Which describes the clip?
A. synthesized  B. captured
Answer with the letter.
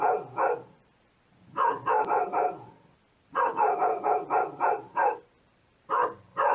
B